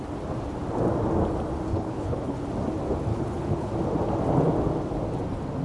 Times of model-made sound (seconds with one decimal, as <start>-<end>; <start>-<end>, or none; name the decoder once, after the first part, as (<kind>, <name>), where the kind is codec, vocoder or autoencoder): 1.7-2.4 (codec, HILCodec); 3.1-3.7